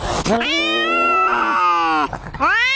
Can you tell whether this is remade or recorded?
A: recorded